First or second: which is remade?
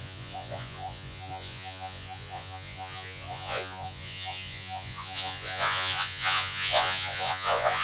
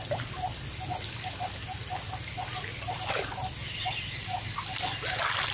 first